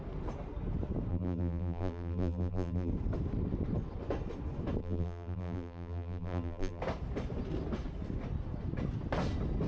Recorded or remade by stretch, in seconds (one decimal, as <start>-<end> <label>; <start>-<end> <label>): 0.0-1.1 recorded; 1.1-2.9 remade; 2.9-4.8 recorded; 4.8-6.8 remade; 6.8-9.7 recorded